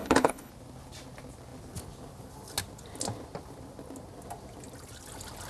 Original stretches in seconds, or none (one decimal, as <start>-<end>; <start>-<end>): 0.5-5.5